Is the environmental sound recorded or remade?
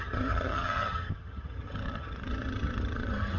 remade